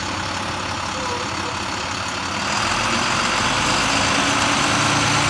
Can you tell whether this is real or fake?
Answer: real